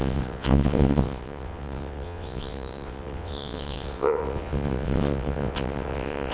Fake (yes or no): yes